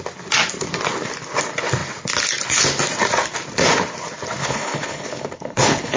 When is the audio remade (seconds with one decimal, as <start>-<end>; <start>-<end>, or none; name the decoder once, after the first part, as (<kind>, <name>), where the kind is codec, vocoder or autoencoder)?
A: 4.4-6.0 (codec, HILCodec)